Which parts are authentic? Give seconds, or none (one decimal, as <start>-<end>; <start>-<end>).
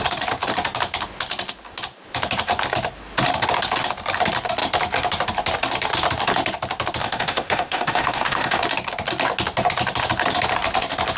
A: 0.0-7.0; 8.6-11.2